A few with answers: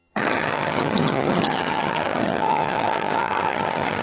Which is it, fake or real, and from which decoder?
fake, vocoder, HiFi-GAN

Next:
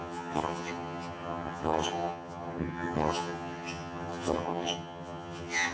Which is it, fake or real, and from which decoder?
fake, vocoder, HiFi-GAN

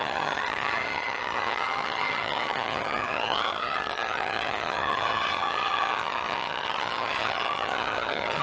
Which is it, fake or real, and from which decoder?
fake, vocoder, HiFi-GAN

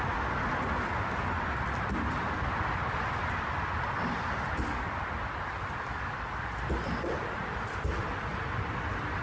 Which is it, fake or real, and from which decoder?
real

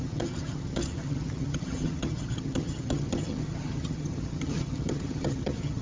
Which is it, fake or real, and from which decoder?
fake, vocoder, HiFi-GAN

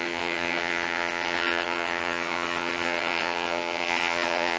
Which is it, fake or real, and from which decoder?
fake, vocoder, HiFi-GAN